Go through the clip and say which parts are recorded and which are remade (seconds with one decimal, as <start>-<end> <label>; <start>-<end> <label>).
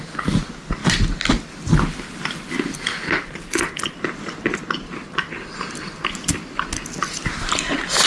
0.0-8.1 recorded